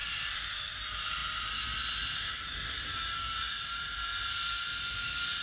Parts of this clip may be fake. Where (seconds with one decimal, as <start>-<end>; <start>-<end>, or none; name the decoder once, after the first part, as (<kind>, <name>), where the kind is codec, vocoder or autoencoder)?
0.0-0.7 (vocoder, BigVGAN v2)